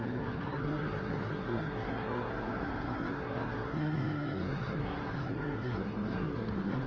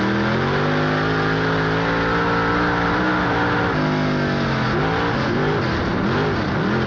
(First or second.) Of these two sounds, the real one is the second